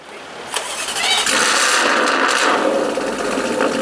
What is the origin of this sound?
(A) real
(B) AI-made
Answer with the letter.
A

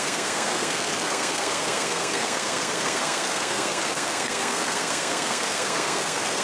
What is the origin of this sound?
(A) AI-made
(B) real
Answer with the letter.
A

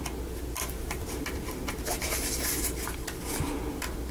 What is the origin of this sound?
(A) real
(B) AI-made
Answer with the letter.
A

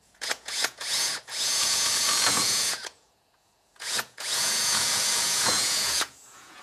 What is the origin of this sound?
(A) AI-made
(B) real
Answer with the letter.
A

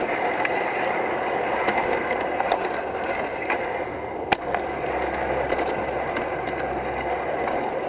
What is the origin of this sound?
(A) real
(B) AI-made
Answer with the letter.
A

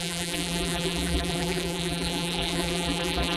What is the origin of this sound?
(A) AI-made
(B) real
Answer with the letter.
A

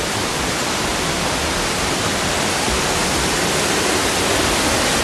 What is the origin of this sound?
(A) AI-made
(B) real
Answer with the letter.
B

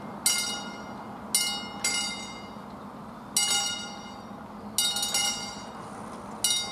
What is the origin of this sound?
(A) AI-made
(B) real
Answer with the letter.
B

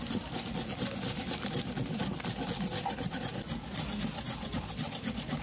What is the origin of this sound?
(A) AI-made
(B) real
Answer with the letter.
B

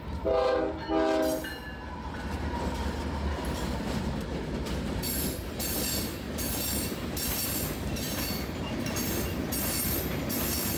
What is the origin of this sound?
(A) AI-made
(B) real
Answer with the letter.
B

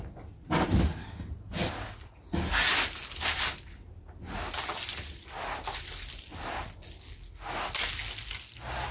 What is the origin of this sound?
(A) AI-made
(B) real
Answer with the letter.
B